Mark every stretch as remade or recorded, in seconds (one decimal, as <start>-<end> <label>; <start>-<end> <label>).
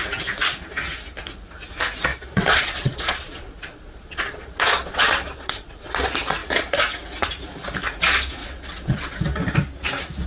0.0-2.1 recorded; 2.1-5.9 remade; 5.9-8.4 recorded; 8.4-9.2 remade; 9.2-10.3 recorded